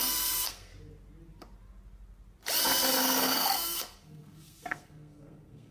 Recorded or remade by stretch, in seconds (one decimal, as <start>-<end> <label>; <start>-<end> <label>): 0.0-0.7 remade; 0.7-3.0 recorded; 3.0-5.7 remade